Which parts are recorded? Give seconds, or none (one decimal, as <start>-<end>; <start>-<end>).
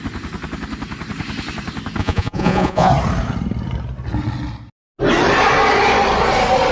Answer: 0.0-2.0; 2.9-6.7